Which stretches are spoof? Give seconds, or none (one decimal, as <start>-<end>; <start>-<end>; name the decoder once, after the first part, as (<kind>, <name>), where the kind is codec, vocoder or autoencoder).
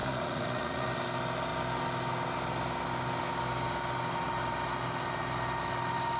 0.0-0.9 (vocoder, Vocos)